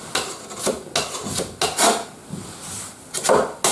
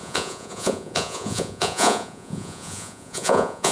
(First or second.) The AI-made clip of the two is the second